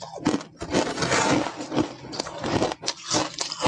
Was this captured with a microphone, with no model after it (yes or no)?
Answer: yes